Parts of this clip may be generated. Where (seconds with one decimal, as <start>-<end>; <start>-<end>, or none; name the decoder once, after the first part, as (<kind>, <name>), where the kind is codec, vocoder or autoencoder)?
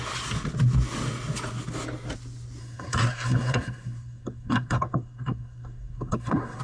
2.6-6.6 (codec, SNAC)